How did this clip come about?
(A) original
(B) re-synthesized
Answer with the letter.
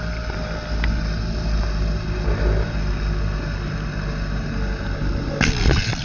A